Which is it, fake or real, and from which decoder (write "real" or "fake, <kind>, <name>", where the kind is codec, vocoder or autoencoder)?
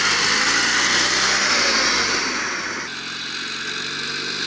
real